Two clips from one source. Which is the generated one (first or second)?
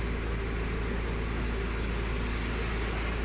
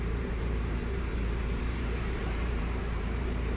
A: second